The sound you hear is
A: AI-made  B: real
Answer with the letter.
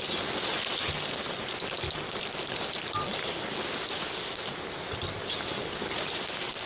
B